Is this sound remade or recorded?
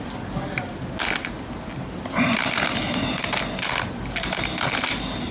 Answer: recorded